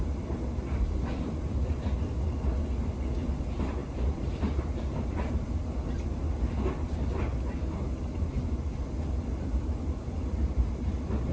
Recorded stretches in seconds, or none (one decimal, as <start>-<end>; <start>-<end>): 0.0-3.8; 5.3-11.3